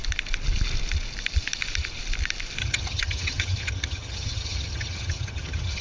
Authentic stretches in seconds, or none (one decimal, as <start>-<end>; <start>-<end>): 0.0-2.6